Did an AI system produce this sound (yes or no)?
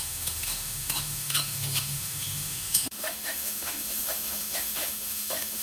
yes